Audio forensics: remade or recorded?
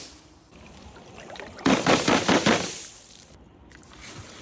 remade